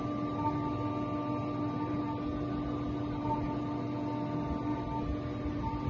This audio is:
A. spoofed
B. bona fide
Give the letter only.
B